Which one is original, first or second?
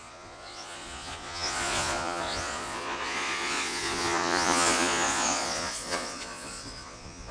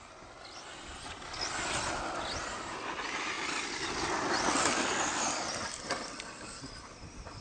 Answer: second